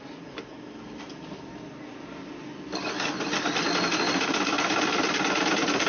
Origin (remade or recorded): recorded